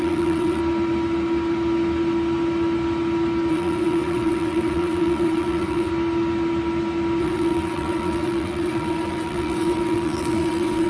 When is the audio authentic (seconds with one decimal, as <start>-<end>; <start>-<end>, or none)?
0.6-3.5; 5.9-7.2